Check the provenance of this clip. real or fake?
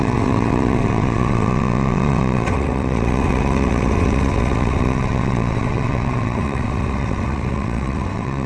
fake